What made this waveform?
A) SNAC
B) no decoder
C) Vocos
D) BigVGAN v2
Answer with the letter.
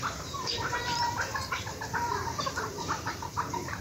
D